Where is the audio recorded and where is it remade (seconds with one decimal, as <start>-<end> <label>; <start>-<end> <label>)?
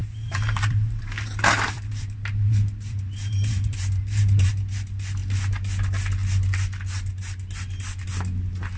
0.0-4.5 remade; 4.5-8.8 recorded